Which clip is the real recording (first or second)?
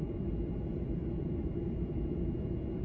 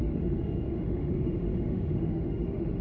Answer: first